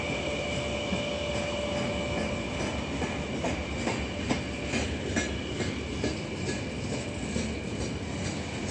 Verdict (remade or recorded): recorded